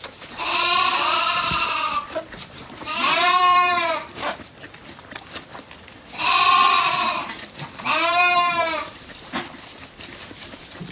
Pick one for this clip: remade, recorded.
remade